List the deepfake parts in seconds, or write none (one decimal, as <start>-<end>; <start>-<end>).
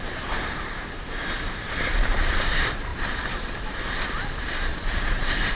0.0-5.5